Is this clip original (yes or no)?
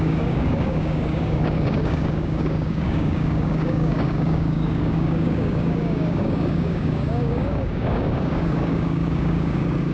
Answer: no